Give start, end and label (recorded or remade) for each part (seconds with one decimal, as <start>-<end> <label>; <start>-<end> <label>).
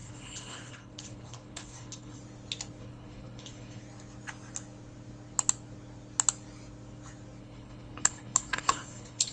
0.0-2.2 remade; 2.2-2.8 recorded; 2.8-3.8 remade; 3.8-7.4 recorded; 7.4-9.3 remade